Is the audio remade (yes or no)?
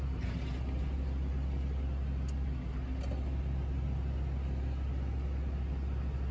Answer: no